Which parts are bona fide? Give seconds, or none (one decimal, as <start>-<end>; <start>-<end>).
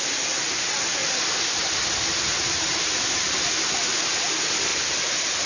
0.0-5.5